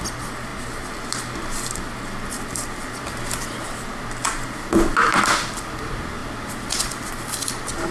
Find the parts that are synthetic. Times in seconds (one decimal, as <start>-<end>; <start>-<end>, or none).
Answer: 4.2-5.7; 6.2-7.1